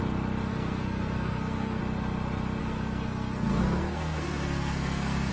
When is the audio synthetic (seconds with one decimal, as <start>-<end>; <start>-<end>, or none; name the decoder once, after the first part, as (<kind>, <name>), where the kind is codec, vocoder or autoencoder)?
0.5-1.8 (codec, SNAC); 2.6-5.3